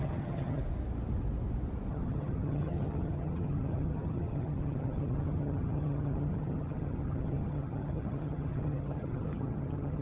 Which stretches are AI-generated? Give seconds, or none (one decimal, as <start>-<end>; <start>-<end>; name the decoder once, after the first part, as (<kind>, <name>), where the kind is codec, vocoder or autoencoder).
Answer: 0.0-0.6 (vocoder, HiFi-GAN); 1.9-10.0